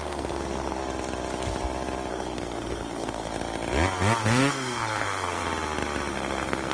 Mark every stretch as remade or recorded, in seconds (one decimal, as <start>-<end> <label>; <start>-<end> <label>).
0.0-0.8 remade; 0.8-2.1 recorded; 2.1-3.3 remade; 3.3-4.2 recorded; 4.2-5.4 remade; 5.4-6.1 recorded; 6.1-6.7 remade